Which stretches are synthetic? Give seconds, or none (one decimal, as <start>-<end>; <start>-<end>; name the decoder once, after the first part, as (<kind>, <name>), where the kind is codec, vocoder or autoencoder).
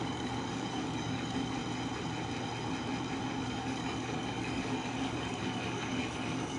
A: 0.0-1.6 (codec, DAC); 3.2-6.6